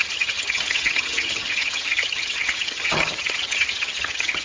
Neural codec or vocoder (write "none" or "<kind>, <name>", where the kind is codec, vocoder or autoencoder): vocoder, HiFi-GAN